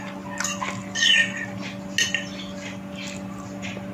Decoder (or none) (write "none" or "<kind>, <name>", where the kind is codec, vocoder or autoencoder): none